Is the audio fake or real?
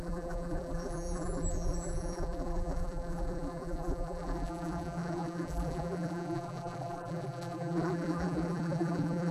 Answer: fake